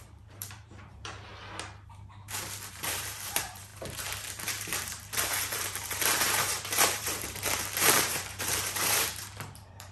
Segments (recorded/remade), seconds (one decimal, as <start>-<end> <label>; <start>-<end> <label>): 0.0-1.3 remade; 1.3-2.7 recorded; 2.7-9.9 remade